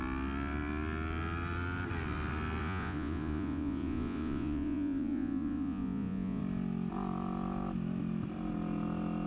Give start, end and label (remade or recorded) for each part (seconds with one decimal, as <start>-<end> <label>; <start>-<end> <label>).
0.0-2.6 recorded; 2.6-6.4 remade; 6.4-9.3 recorded